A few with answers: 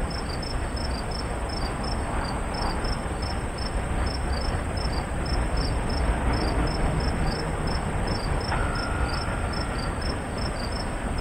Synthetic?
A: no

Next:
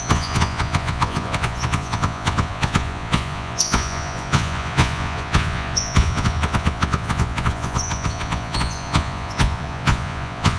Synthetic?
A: yes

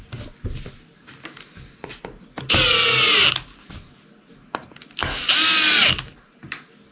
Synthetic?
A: no